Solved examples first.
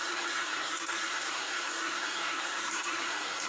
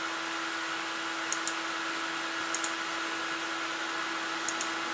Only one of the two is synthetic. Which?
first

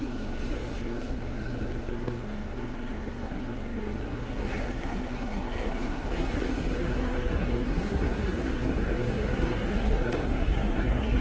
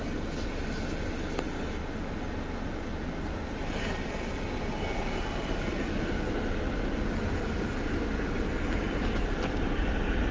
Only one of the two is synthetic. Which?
first